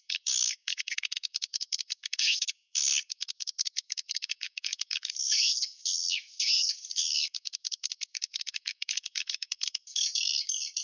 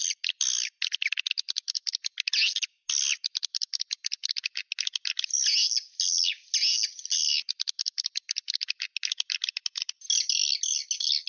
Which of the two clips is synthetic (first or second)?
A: first